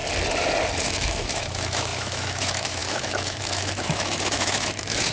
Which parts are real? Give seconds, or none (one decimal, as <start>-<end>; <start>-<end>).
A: 0.0-0.8